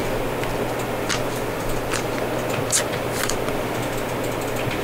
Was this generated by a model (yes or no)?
no